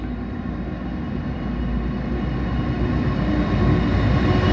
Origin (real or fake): real